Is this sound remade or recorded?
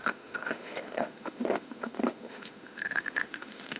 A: remade